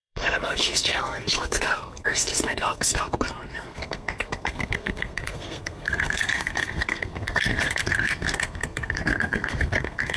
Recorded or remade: remade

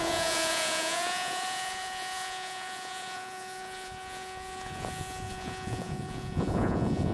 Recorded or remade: remade